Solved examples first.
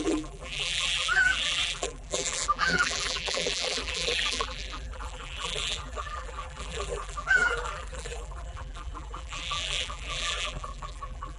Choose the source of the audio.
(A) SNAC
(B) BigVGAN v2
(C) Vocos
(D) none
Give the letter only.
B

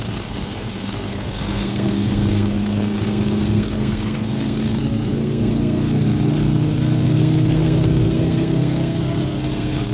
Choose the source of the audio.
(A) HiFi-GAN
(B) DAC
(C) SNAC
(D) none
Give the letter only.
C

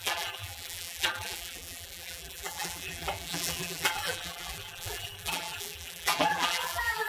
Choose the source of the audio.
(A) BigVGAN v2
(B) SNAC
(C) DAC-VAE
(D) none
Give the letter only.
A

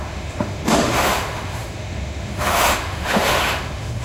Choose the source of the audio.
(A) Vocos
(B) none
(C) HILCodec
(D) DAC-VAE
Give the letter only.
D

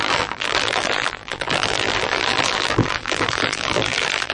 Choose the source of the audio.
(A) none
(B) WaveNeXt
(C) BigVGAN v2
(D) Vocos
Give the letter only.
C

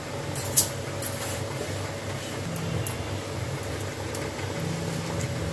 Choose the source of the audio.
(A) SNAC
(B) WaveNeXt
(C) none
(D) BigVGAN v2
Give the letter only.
C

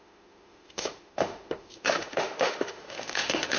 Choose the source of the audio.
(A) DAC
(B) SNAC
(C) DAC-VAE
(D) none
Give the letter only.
C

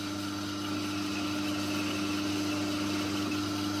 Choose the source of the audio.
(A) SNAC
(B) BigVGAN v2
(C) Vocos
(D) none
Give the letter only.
D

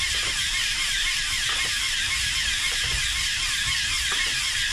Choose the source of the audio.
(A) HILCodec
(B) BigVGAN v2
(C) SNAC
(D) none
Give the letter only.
B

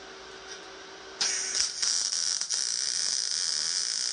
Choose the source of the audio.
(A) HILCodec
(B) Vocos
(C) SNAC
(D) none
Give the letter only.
D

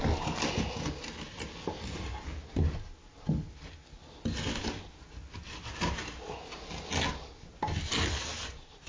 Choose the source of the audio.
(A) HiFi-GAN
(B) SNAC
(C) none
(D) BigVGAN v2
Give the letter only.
C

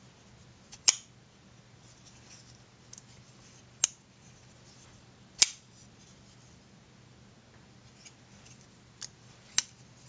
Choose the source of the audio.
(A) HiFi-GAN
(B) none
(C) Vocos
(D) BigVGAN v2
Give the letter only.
B